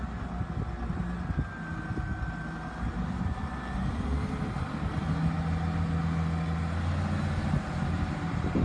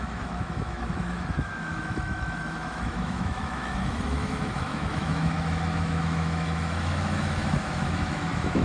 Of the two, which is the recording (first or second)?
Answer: first